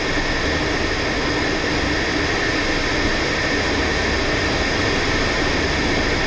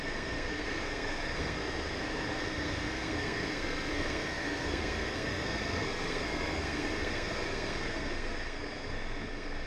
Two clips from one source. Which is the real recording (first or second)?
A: first